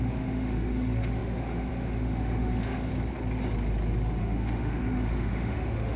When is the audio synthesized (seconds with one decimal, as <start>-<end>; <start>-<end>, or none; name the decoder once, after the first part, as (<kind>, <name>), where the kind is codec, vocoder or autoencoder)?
0.0-2.9 (autoencoder, DAC-VAE); 4.2-6.0